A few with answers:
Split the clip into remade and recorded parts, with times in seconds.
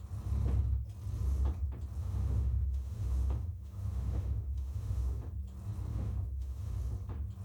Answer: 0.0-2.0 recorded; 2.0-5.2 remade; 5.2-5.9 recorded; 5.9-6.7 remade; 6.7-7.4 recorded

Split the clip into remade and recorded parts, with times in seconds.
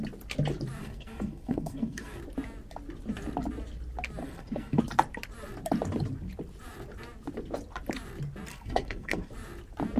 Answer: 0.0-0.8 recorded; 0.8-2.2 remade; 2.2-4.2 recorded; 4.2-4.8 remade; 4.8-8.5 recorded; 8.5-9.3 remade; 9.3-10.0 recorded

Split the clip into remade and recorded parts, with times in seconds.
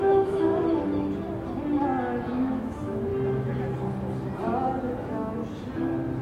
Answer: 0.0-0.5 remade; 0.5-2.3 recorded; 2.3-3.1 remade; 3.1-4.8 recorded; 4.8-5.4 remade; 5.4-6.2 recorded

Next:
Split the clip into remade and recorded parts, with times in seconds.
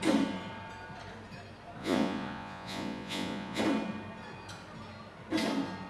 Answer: 0.0-1.8 recorded; 1.8-3.6 remade; 3.6-5.9 recorded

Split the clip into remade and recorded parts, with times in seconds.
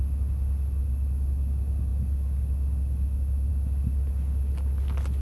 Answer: 0.0-5.2 recorded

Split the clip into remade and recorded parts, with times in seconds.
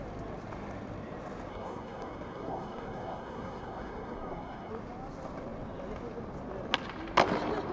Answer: 0.0-1.5 recorded; 1.5-4.7 remade; 4.7-7.7 recorded